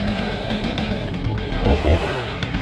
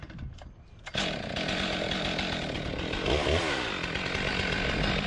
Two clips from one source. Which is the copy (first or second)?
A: first